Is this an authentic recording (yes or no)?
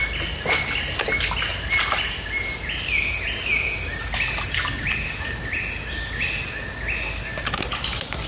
yes